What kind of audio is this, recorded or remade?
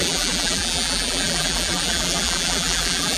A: remade